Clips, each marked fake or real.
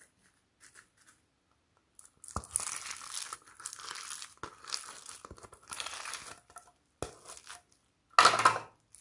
real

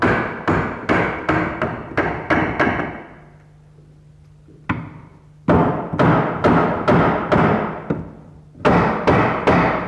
real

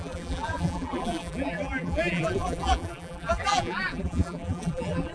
fake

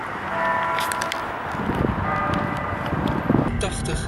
fake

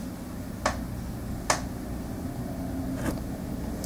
real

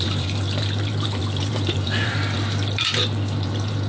fake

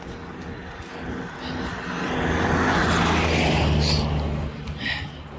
real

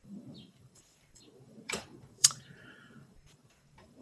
fake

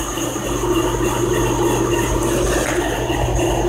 real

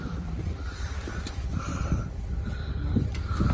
fake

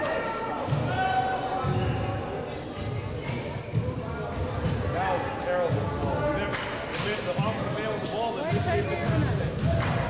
real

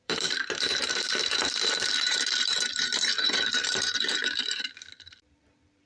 fake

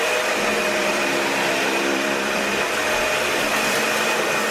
fake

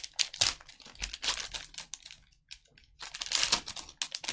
real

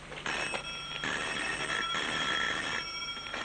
fake